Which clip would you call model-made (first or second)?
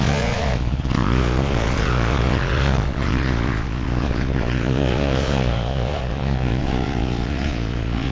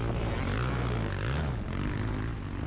first